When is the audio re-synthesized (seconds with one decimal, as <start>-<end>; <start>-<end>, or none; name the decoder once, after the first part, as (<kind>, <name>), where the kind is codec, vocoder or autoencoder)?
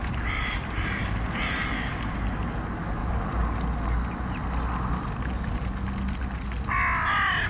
0.0-1.9 (vocoder, BigVGAN v2); 3.0-3.6